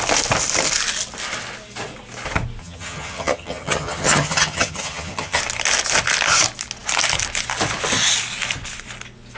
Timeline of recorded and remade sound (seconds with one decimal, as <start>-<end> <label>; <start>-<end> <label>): 0.0-2.6 recorded; 2.6-5.4 remade; 5.4-9.4 recorded